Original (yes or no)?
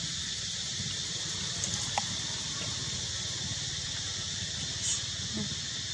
yes